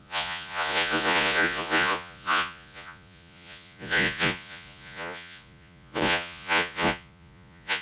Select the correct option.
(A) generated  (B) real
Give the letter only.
A